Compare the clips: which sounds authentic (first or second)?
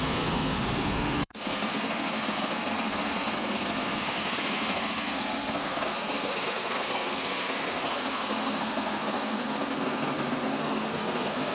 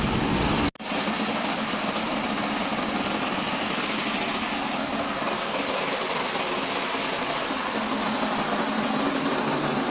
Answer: second